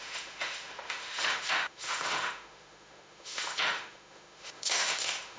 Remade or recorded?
remade